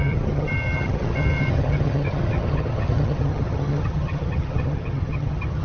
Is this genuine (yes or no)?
no